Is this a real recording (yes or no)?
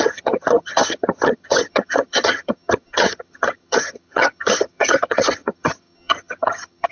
no